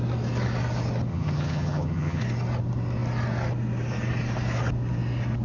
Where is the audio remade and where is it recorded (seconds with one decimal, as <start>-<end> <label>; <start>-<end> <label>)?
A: 0.0-1.1 recorded; 1.1-2.2 remade; 2.2-5.4 recorded